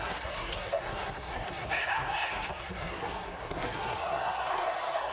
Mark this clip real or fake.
fake